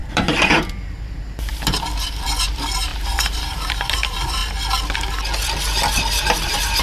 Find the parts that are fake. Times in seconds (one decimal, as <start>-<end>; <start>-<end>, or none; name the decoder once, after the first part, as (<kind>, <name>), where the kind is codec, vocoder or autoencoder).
0.0-4.4 (vocoder, BigVGAN v2); 6.2-6.8